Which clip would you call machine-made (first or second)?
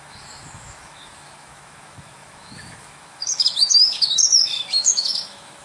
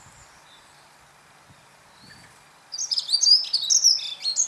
first